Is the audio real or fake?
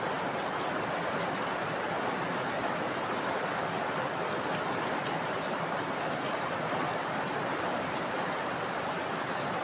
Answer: real